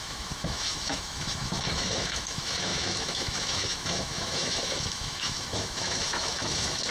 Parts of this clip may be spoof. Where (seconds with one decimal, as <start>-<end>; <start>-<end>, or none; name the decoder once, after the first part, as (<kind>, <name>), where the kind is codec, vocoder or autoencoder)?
0.0-6.9 (autoencoder, DAC-VAE)